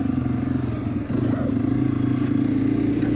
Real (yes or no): yes